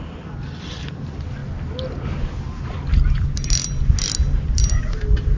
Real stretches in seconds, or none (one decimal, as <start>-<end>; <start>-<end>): 0.0-5.4